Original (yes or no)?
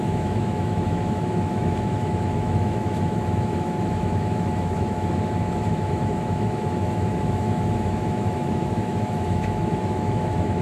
no